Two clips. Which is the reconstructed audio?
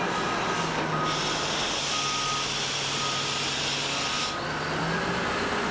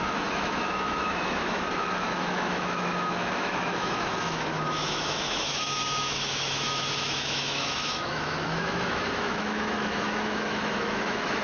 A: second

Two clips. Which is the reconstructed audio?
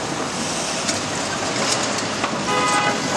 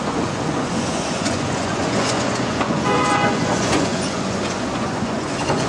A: second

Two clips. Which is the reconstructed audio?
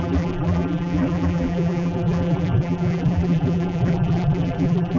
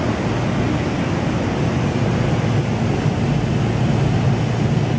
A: first